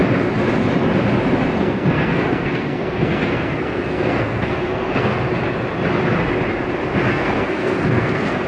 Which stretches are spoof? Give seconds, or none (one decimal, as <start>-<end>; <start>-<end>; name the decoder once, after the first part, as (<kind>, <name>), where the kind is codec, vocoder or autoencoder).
1.6-5.1 (codec, SNAC); 7.1-8.5